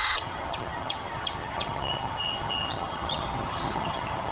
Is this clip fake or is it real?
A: fake